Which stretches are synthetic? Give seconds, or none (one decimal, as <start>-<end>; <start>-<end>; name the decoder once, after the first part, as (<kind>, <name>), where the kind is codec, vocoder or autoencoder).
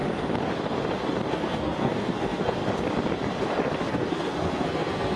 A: 1.3-2.6 (codec, SNAC); 3.9-5.2